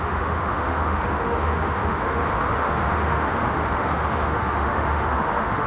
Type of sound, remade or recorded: remade